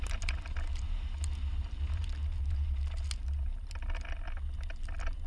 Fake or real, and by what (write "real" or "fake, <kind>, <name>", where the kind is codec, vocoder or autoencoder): real